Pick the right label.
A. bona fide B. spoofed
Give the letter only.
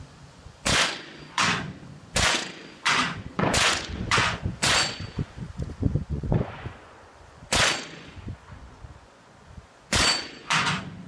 B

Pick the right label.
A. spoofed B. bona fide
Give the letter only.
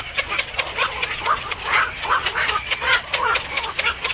A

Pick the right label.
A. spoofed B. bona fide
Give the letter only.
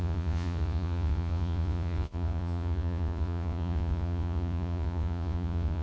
A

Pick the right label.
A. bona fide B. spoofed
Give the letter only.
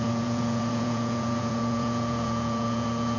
B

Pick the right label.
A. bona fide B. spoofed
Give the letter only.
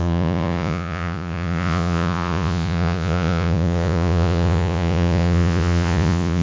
B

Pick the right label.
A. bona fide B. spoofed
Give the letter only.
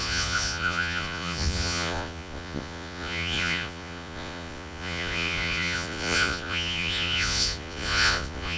B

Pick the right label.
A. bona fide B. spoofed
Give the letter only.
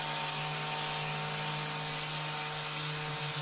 A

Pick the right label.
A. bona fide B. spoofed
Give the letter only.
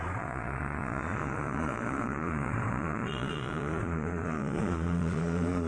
B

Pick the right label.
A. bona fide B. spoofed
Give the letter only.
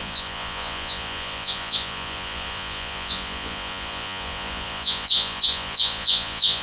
B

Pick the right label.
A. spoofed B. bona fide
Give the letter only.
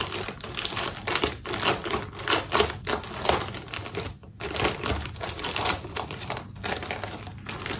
B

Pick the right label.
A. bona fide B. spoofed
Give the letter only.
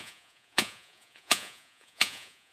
B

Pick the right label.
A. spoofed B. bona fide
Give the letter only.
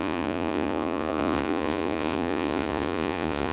A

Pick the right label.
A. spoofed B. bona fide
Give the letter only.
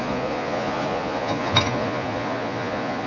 A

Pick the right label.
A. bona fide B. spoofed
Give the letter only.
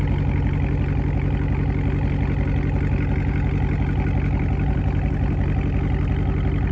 A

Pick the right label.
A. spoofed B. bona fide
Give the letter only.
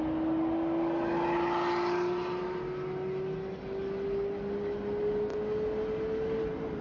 B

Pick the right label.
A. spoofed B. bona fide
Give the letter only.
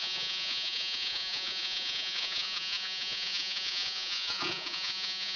A